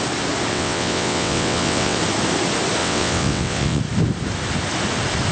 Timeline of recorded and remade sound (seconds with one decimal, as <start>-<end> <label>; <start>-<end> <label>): 0.0-0.5 recorded; 0.5-2.0 remade; 2.0-2.8 recorded; 2.8-3.8 remade; 3.8-5.3 recorded